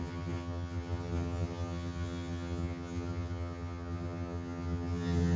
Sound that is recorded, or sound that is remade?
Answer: remade